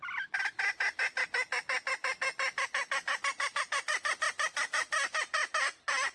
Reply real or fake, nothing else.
real